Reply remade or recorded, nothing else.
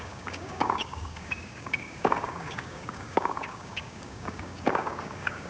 remade